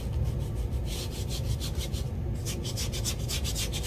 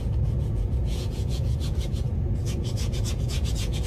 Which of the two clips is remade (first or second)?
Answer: second